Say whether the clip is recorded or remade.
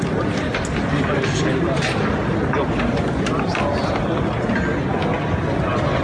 recorded